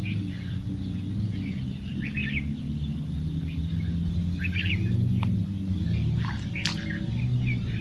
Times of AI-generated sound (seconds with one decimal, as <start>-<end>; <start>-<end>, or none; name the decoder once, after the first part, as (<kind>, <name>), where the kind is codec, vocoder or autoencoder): none